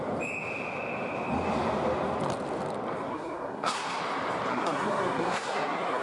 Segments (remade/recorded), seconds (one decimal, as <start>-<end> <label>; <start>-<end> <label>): 0.0-3.1 recorded; 3.1-4.0 remade; 4.0-4.5 recorded; 4.5-6.0 remade